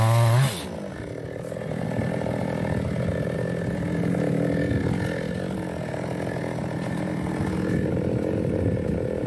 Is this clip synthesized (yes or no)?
no